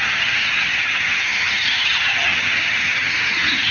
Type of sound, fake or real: fake